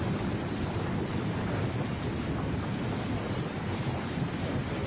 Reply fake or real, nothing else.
real